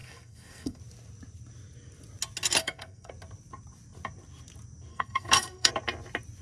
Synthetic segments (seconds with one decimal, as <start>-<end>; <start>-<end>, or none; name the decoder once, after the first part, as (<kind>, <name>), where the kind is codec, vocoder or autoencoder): 0.0-0.8 (codec, SNAC); 2.6-3.1; 4.9-5.7